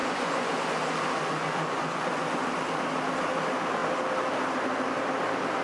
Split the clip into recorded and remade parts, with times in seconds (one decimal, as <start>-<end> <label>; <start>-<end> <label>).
0.0-2.5 remade; 2.5-5.6 recorded